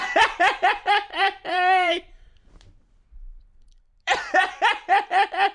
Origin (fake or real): fake